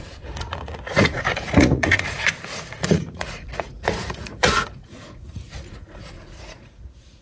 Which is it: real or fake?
fake